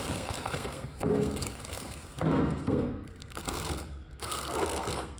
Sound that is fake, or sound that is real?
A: fake